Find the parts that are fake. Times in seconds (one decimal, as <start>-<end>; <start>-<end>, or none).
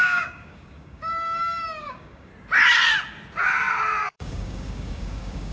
0.0-2.3; 4.0-5.5